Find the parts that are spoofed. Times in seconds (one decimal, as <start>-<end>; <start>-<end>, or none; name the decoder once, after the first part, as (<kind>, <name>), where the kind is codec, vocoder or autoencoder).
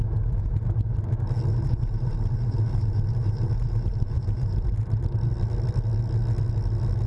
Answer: 1.5-5.0 (vocoder, BigVGAN v2)